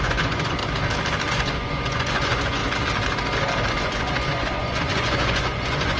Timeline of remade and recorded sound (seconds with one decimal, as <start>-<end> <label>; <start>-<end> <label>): 0.0-0.6 remade; 0.6-1.3 recorded; 1.3-2.6 remade; 2.6-3.7 recorded; 3.7-6.0 remade